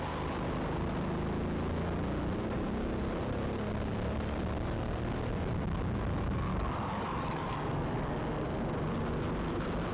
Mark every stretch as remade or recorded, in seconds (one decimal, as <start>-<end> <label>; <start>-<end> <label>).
0.0-6.5 recorded; 6.5-8.6 remade; 8.6-9.9 recorded